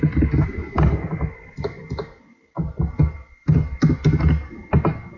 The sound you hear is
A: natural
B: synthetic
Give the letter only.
A